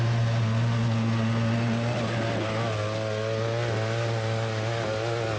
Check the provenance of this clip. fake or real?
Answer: real